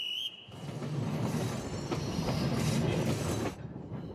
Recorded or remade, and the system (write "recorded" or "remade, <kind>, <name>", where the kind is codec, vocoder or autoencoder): remade, vocoder, BigVGAN v2